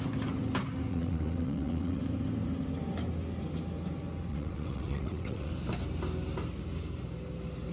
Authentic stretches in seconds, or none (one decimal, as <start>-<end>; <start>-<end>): 0.0-0.9; 2.0-4.3; 5.5-7.7